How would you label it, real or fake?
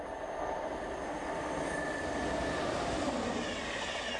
real